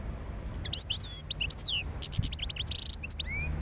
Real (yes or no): yes